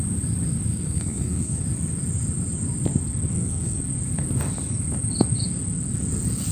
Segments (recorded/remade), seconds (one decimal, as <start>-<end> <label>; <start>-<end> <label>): 0.0-0.7 recorded; 0.7-1.6 remade; 1.6-3.3 recorded; 3.3-3.8 remade; 3.8-6.5 recorded